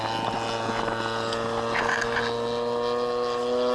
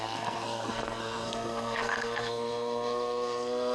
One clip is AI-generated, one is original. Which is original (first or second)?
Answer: first